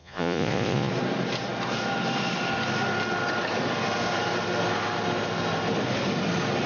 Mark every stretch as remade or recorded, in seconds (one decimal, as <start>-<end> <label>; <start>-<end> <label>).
0.0-0.9 remade; 0.9-6.7 recorded